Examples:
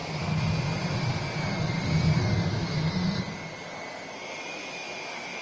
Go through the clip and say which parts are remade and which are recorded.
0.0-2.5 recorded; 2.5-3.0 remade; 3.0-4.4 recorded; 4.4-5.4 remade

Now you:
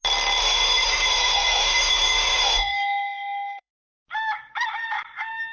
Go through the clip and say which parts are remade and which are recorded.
0.0-0.4 recorded; 0.4-3.7 remade; 3.7-5.5 recorded

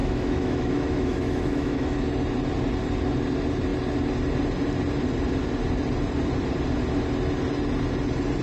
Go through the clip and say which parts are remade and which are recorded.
0.0-2.0 remade; 2.0-8.4 recorded

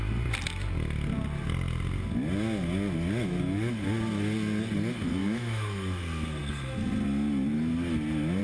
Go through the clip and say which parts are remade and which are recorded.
0.0-5.2 recorded; 5.2-6.0 remade; 6.0-8.4 recorded